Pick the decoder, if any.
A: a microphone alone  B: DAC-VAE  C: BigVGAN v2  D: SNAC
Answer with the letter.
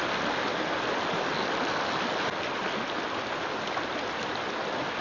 A